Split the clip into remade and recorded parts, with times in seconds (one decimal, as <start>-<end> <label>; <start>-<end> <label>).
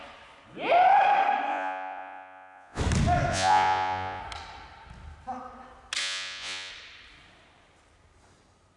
0.0-1.5 recorded; 1.5-2.8 remade; 2.8-3.3 recorded; 3.3-4.2 remade; 4.2-6.0 recorded; 6.0-6.7 remade; 6.7-8.8 recorded